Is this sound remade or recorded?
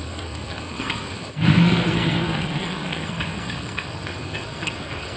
remade